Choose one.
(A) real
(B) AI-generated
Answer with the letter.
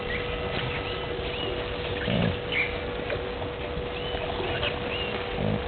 A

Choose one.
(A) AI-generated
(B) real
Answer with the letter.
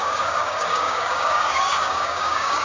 A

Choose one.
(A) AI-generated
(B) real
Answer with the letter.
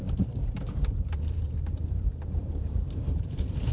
A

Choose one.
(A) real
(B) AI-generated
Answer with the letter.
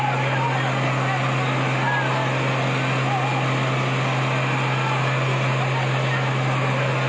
A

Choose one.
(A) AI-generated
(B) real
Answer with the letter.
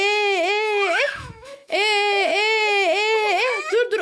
A